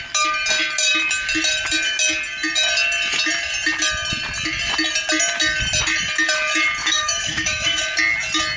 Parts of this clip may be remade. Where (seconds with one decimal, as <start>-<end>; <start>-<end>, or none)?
6.8-7.8